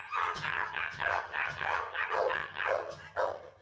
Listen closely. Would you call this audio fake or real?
fake